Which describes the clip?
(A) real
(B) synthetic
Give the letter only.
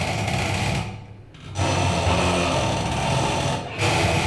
A